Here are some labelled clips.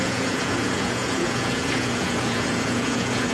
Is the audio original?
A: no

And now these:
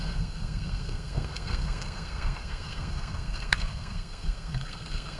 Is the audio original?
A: no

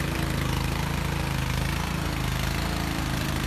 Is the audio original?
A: no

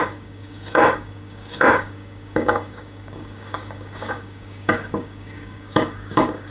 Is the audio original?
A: no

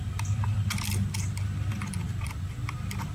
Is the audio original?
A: yes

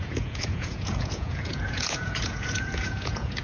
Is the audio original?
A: no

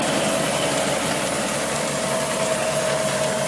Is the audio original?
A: yes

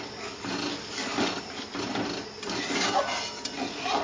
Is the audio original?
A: yes